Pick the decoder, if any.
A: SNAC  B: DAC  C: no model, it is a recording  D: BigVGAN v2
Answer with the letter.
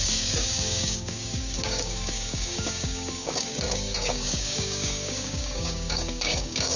B